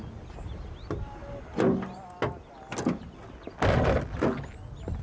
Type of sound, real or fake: real